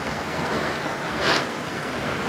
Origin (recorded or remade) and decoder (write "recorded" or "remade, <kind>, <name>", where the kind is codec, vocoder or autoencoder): remade, codec, SNAC